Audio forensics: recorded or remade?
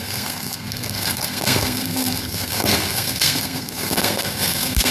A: remade